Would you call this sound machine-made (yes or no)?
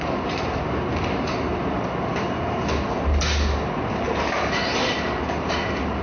no